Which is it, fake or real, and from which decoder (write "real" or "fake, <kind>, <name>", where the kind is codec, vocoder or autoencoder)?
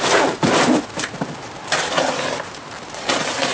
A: real